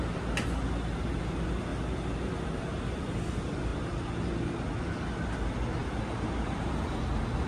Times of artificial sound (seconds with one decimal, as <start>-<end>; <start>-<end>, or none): none